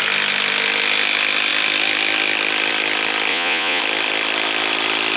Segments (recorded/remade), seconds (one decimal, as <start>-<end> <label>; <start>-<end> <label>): 0.0-3.3 recorded; 3.3-3.8 remade; 3.8-5.2 recorded